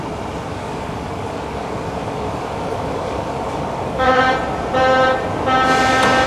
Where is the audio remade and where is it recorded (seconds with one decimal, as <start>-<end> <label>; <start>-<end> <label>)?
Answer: 0.0-0.5 recorded; 0.5-4.2 remade; 4.2-6.3 recorded